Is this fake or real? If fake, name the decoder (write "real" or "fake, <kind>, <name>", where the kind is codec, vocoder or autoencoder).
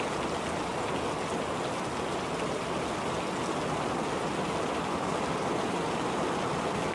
real